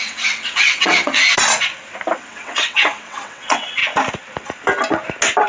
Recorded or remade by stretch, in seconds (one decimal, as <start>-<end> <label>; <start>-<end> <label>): 0.0-1.2 remade; 1.2-2.2 recorded; 2.2-3.8 remade; 3.8-5.5 recorded